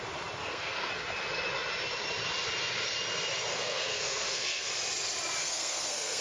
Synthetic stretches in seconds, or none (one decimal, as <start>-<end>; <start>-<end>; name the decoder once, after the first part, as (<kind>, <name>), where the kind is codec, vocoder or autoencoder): 0.4-0.9 (codec, SNAC); 3.5-4.7; 5.4-6.2